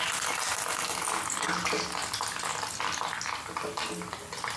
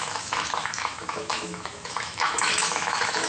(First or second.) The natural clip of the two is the first